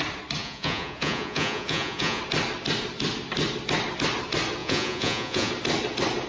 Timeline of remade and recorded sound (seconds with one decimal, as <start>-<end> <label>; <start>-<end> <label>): 0.0-0.4 recorded; 0.4-2.2 remade; 2.2-4.6 recorded; 4.6-5.5 remade; 5.5-6.3 recorded

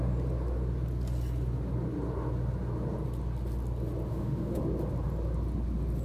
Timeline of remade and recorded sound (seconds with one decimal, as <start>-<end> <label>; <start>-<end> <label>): 0.0-4.1 recorded; 4.1-4.6 remade; 4.6-6.0 recorded

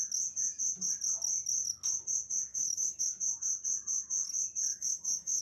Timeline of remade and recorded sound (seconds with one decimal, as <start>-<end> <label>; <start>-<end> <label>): 0.0-2.5 recorded; 2.5-3.0 remade; 3.0-4.7 recorded; 4.7-5.4 remade

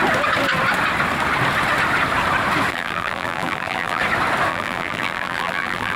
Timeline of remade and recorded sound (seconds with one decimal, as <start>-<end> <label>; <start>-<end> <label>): 0.0-2.7 recorded; 2.7-4.0 remade; 4.0-4.5 recorded; 4.5-6.0 remade

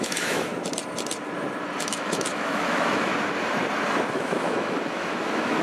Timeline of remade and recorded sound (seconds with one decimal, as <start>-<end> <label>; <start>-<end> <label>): 0.0-0.5 remade; 0.5-1.8 recorded; 1.8-3.1 remade; 3.1-4.1 recorded; 4.1-5.6 remade

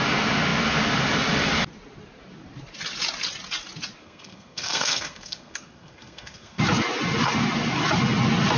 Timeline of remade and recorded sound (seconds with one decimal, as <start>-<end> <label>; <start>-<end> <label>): 0.0-4.0 recorded; 4.0-6.6 remade; 6.6-8.6 recorded

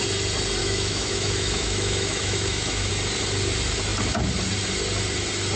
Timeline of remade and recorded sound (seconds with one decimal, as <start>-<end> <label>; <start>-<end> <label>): 0.0-0.6 recorded; 0.6-2.9 remade; 2.9-5.6 recorded